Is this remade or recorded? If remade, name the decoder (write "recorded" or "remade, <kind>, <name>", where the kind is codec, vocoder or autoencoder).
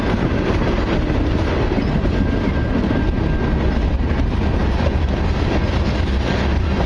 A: recorded